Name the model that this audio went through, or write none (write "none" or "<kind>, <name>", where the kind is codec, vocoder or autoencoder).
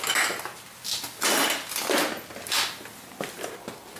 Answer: none